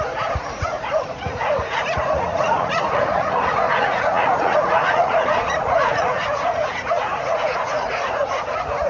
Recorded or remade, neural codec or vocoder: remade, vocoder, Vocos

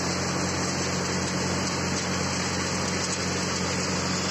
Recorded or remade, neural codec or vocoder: recorded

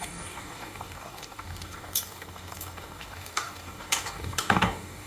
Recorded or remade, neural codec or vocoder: remade, codec, DAC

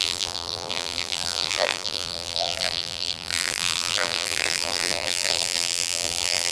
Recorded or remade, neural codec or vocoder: remade, vocoder, BigVGAN v2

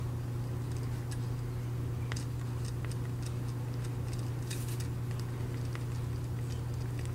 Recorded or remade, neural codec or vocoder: recorded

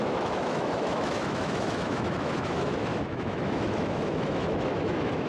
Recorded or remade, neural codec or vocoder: remade, autoencoder, DAC-VAE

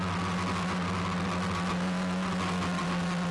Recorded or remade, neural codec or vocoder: recorded